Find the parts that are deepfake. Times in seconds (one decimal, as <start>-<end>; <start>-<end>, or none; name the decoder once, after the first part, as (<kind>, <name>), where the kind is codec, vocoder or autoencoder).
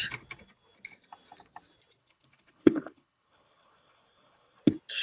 2.0-4.6 (codec, HILCodec)